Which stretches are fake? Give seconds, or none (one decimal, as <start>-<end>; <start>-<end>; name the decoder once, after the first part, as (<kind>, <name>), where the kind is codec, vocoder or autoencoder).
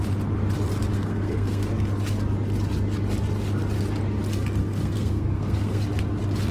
0.9-1.6 (codec, SNAC); 4.6-5.8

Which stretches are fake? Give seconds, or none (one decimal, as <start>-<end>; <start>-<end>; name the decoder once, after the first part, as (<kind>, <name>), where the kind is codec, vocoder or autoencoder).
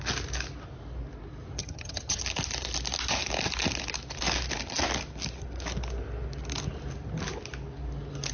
1.6-2.2 (vocoder, HiFi-GAN)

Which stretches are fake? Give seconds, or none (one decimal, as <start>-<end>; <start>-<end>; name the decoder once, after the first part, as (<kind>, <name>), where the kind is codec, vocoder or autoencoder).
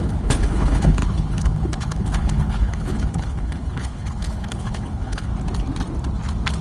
0.0-5.3 (codec, HILCodec)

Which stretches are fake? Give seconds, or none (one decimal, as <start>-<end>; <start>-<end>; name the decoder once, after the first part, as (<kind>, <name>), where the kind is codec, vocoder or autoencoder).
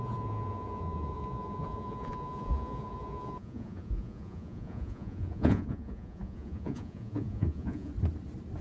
0.0-7.9 (vocoder, Vocos)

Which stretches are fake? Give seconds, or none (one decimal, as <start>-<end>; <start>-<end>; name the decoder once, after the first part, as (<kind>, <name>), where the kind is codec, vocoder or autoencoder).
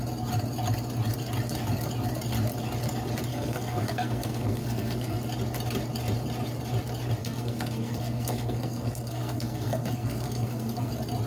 3.3-5.2 (codec, SNAC); 7.2-10.9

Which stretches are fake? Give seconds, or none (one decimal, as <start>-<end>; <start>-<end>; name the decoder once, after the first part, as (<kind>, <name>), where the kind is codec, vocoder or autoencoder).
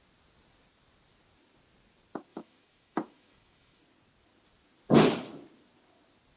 2.3-3.8 (autoencoder, DAC-VAE)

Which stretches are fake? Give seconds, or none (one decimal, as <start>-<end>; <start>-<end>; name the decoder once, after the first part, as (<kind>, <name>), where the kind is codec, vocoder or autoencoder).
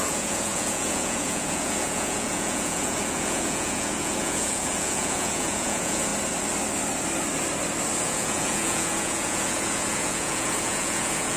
0.0-6.1 (vocoder, Vocos); 8.0-11.4